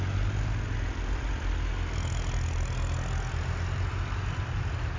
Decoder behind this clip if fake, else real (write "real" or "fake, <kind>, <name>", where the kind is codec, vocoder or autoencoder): real